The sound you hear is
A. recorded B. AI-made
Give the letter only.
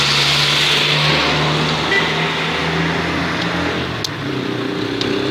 A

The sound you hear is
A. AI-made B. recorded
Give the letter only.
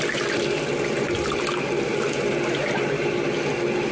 B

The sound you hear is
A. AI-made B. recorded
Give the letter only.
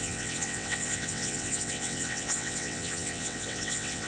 A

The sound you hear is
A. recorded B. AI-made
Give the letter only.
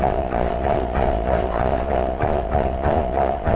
B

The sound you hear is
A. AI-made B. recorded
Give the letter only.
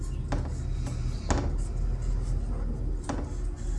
B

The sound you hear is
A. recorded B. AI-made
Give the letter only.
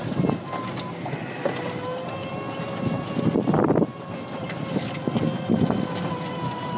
A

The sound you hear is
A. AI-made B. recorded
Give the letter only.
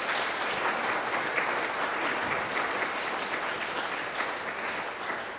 B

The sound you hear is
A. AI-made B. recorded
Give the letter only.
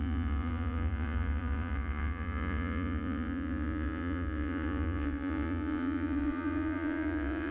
A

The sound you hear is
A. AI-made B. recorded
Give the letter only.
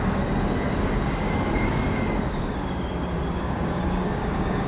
A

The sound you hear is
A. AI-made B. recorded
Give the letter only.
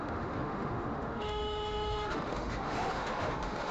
A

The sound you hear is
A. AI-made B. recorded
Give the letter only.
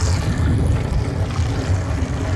B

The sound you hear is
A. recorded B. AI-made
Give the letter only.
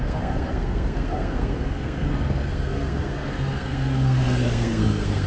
B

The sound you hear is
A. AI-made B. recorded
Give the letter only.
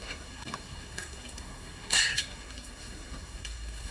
A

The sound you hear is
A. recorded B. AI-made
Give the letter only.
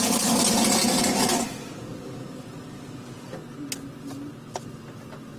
A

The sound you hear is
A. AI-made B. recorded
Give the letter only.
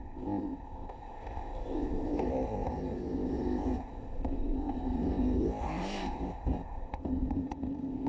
A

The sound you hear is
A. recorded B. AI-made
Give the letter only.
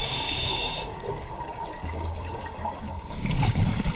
B